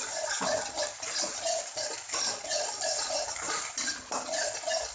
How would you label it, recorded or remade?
recorded